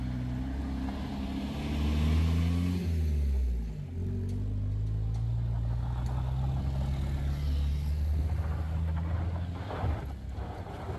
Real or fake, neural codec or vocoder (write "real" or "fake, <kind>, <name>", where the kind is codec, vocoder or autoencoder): real